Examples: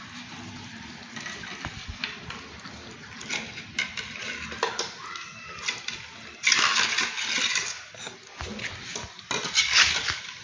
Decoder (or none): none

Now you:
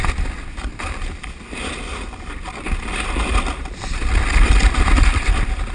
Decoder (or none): none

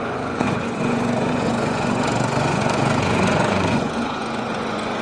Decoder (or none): vocoder, Vocos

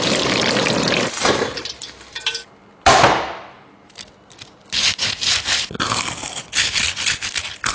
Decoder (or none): none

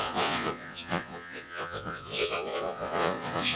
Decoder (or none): vocoder, Vocos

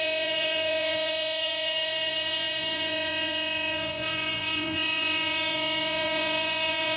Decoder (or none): vocoder, Vocos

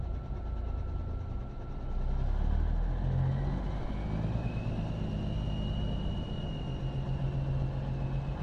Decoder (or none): none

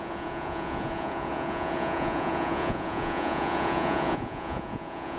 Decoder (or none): vocoder, Vocos